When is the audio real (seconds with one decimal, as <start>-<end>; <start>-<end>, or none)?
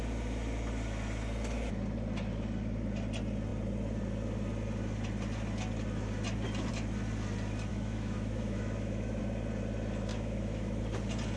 0.0-7.7; 9.2-10.1; 10.8-11.4